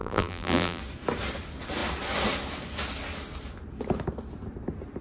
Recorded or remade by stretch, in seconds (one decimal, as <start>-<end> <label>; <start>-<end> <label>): 0.0-0.8 remade; 0.8-5.0 recorded